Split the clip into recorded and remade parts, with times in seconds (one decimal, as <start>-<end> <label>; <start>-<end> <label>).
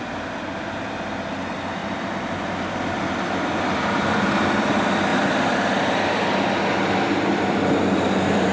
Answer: 0.0-1.8 recorded; 1.8-2.6 remade; 2.6-8.5 recorded